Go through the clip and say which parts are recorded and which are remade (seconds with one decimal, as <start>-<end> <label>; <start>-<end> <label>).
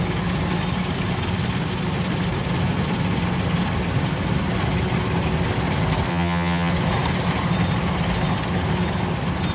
0.0-6.1 recorded; 6.1-6.7 remade; 6.7-9.5 recorded